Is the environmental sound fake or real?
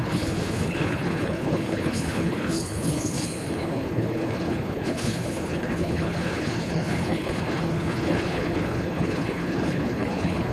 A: fake